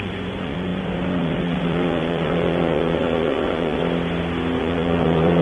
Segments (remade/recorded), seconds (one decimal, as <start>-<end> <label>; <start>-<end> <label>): 0.0-3.8 remade; 3.8-4.6 recorded; 4.6-5.4 remade